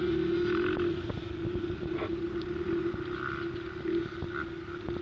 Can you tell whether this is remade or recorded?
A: recorded